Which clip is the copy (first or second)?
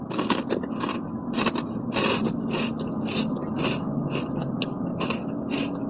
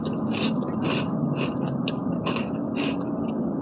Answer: second